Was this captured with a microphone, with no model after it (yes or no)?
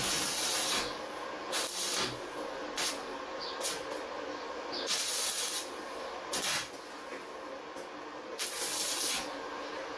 yes